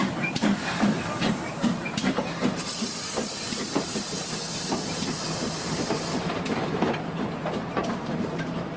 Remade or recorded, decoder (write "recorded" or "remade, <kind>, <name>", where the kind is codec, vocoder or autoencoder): remade, vocoder, BigVGAN v2